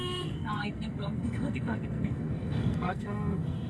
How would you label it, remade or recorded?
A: remade